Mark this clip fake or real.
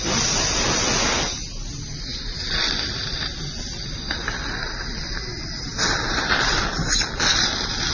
fake